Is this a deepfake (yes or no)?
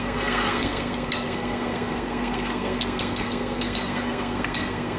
yes